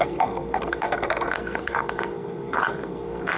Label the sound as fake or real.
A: fake